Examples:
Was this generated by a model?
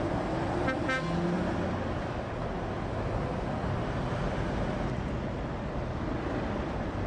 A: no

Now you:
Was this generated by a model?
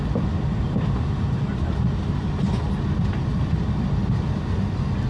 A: no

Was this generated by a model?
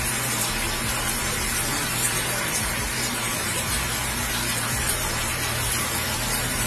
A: yes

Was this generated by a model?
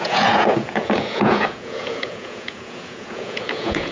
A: yes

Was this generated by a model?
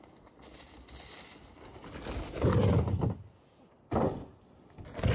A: no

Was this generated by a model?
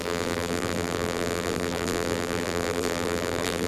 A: yes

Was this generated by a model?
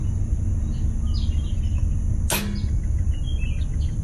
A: no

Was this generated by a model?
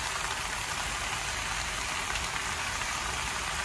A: yes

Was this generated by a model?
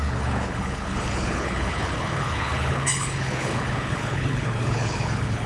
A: yes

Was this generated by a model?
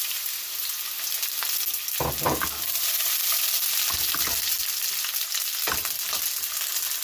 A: no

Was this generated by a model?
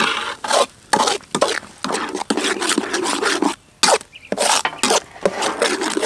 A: no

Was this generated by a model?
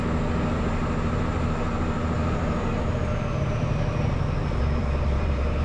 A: yes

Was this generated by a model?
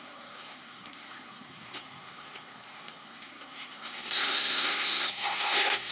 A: yes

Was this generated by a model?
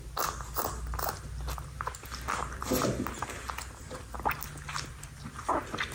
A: no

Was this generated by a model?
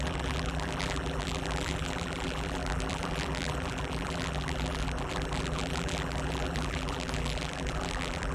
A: yes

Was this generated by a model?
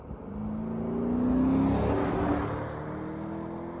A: no